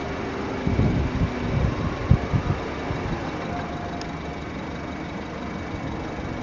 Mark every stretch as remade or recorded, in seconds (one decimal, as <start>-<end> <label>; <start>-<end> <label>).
0.0-6.4 recorded